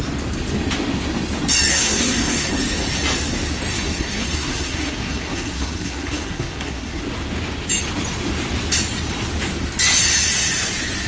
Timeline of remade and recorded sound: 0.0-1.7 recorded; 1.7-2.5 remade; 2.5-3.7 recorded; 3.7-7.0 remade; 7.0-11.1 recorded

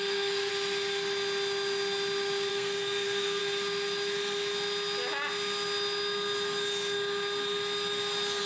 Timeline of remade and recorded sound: 0.0-0.5 remade; 0.5-2.5 recorded; 2.5-3.4 remade; 3.4-8.4 recorded

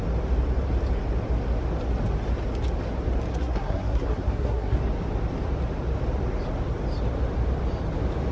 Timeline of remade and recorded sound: 0.0-3.3 recorded; 3.3-4.8 remade; 4.8-8.3 recorded

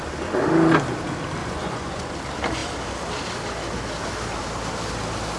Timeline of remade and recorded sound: 0.0-1.4 recorded; 1.4-2.1 remade; 2.1-5.4 recorded